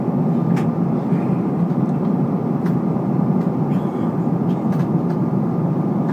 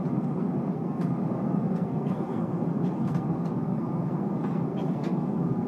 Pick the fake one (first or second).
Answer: second